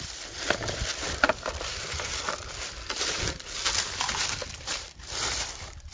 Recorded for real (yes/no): no